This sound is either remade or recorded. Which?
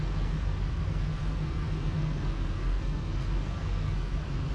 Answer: remade